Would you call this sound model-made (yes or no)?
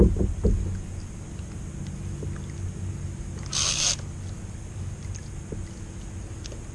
no